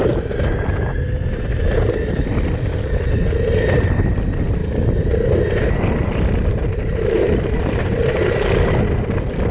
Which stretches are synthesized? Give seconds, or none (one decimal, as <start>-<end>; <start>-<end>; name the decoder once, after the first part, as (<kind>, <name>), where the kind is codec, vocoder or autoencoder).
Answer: 6.6-8.5 (vocoder, BigVGAN v2)